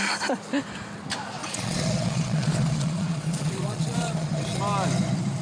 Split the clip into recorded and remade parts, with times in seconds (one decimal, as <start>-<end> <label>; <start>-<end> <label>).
0.0-1.4 recorded; 1.4-4.6 remade; 4.6-5.4 recorded